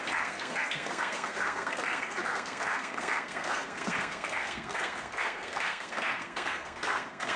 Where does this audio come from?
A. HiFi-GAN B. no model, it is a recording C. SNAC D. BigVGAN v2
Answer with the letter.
C